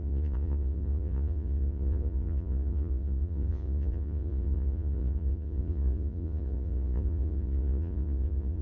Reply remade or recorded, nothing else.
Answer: remade